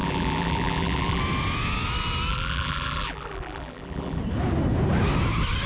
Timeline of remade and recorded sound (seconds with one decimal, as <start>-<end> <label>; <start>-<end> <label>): 0.0-1.2 remade; 1.2-2.3 recorded; 2.3-4.2 remade; 4.2-5.7 recorded